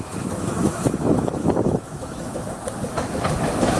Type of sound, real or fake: fake